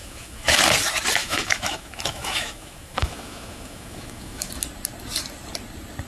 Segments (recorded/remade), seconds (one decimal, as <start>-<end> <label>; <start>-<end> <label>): 0.0-0.6 remade; 0.6-1.2 recorded; 1.2-4.5 remade; 4.5-6.1 recorded